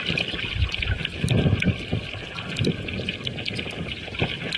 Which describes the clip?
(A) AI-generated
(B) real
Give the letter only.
B